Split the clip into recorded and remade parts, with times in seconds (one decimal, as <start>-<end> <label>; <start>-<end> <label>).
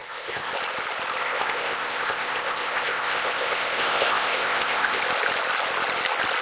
0.0-0.5 remade; 0.5-1.2 recorded; 1.2-5.0 remade; 5.0-6.4 recorded